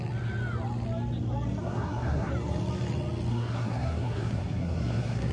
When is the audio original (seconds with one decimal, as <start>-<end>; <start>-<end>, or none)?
0.0-1.6; 2.3-3.3